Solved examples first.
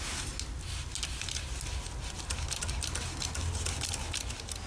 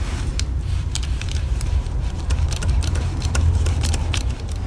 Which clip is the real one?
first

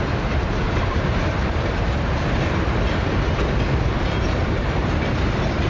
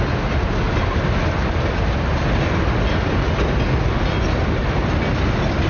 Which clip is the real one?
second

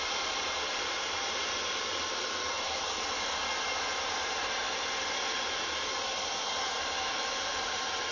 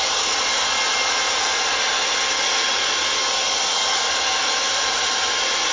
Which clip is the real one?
second